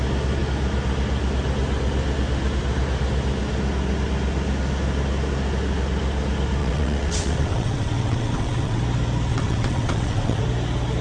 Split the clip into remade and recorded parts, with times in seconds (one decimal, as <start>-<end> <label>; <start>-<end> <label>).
0.0-6.6 recorded; 6.6-8.8 remade; 8.8-9.3 recorded; 9.3-10.4 remade; 10.4-11.0 recorded